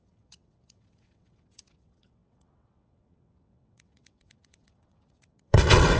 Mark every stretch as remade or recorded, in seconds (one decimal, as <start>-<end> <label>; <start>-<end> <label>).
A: 0.0-6.0 remade